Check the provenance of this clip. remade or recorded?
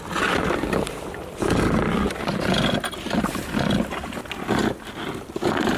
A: recorded